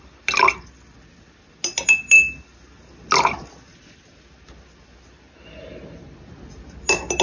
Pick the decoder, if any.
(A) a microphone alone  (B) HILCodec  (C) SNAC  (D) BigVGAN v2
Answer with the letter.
A